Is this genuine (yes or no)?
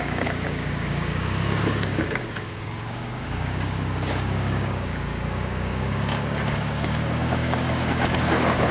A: no